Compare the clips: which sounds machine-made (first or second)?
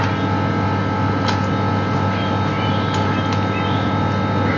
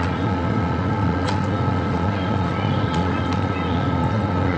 second